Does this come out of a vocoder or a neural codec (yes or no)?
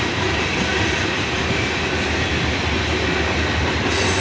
no